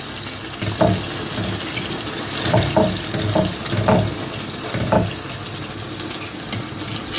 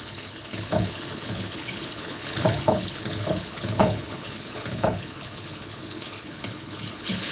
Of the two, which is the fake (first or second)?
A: second